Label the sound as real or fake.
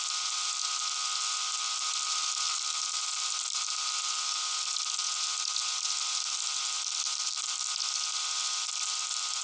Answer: real